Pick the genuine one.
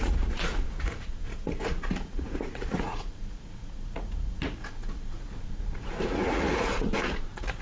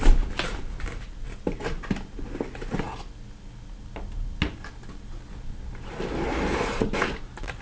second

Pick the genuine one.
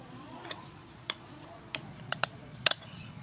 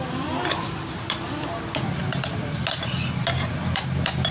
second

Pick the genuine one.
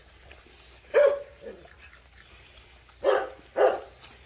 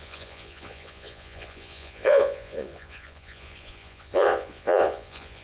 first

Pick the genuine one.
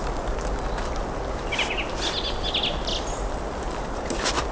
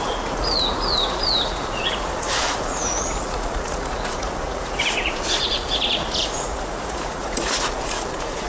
first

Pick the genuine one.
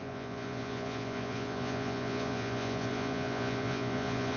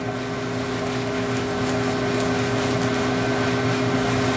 second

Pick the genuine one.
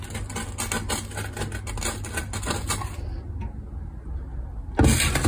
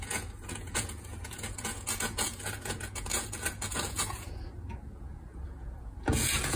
first